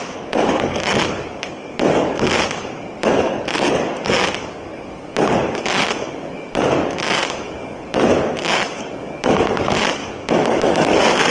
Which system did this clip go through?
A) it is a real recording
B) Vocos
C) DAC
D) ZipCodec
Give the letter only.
C